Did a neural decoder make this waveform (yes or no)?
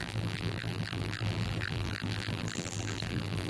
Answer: yes